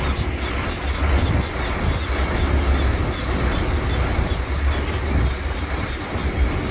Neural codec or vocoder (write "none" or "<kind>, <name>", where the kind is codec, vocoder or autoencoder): none